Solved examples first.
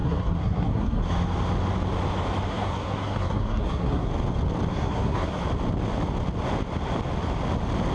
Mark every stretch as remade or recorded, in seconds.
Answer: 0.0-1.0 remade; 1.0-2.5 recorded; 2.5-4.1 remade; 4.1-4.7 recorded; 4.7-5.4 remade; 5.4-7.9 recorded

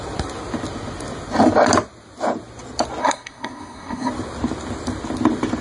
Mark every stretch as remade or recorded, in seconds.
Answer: 0.0-3.0 recorded; 3.0-4.1 remade; 4.1-5.6 recorded

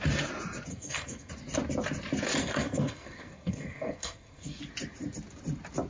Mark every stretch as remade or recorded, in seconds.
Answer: 0.0-0.7 recorded; 0.7-1.3 remade; 1.3-2.4 recorded; 2.4-4.6 remade; 4.6-5.9 recorded